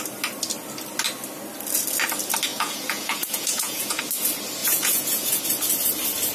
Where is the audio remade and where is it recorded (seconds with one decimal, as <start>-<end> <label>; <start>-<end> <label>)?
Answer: 0.0-2.5 recorded; 2.5-4.0 remade; 4.0-4.6 recorded; 4.6-5.4 remade; 5.4-6.3 recorded